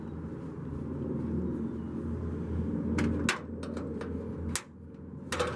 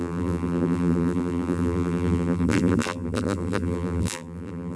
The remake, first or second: second